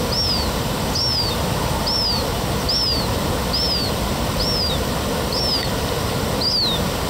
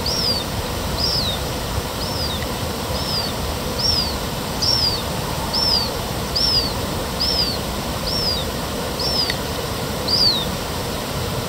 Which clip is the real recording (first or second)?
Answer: first